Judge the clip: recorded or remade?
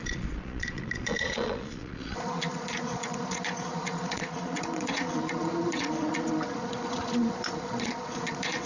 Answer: remade